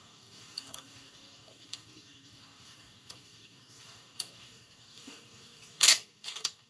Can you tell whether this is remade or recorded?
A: remade